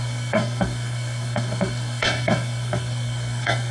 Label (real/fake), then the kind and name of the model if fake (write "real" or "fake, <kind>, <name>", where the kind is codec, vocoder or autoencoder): fake, codec, SNAC